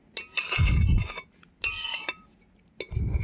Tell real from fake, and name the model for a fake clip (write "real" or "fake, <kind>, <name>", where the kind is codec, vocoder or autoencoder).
real